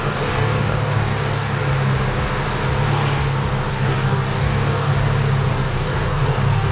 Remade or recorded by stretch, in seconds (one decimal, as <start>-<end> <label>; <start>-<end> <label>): 0.0-1.6 remade; 1.6-3.7 recorded; 3.7-4.9 remade; 4.9-5.5 recorded; 5.5-6.7 remade